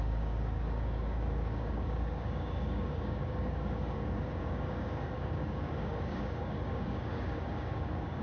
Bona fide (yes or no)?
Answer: no